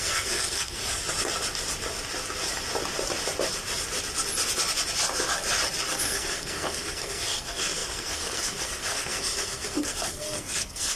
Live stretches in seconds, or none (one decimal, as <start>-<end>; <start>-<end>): 0.8-6.0